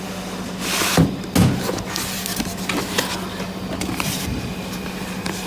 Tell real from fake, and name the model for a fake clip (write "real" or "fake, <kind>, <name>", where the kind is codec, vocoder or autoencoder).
real